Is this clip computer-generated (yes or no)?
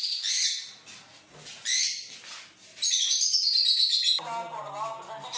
no